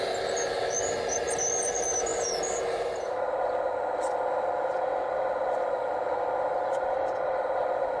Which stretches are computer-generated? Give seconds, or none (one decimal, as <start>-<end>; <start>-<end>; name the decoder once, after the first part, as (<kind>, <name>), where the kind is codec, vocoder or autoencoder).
none